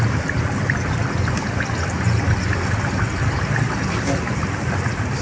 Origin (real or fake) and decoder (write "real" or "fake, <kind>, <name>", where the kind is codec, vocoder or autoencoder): real